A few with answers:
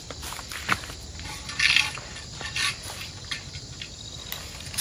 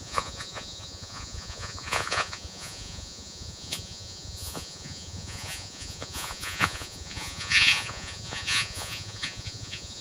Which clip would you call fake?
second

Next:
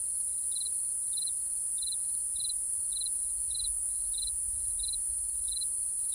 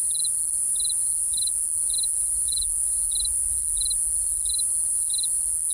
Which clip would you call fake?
first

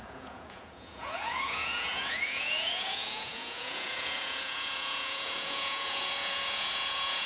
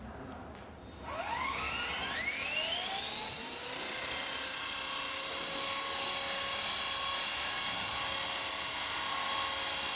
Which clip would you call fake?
first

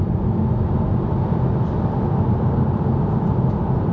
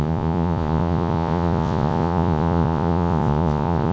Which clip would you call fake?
second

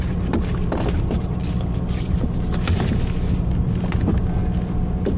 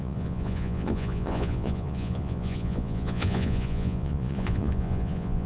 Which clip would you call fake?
second